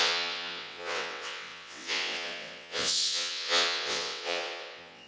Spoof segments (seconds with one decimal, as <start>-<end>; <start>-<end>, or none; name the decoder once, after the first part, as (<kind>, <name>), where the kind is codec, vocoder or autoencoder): 0.0-5.1 (vocoder, WaveNeXt)